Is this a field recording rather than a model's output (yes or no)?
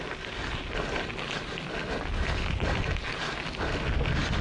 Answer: yes